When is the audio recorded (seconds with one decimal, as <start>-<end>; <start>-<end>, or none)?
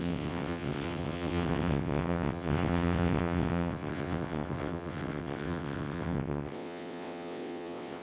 none